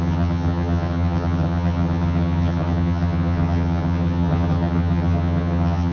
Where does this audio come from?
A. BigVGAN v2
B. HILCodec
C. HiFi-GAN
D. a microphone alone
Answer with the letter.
C